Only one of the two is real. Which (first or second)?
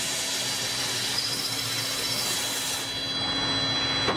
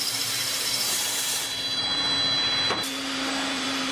first